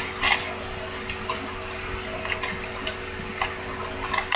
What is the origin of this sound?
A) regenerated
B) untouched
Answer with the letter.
B